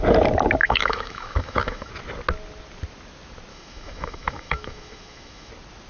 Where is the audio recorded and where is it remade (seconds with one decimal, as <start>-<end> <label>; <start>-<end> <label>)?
0.0-0.6 recorded; 0.6-1.9 remade; 1.9-3.5 recorded; 3.5-5.5 remade; 5.5-5.9 recorded